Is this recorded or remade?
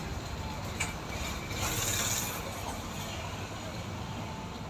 recorded